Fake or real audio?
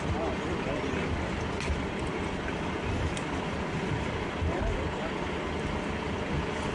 real